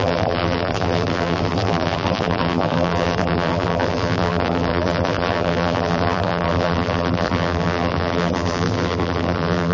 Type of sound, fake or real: fake